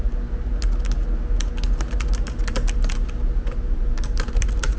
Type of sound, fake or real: real